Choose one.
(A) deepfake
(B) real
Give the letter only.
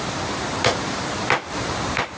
B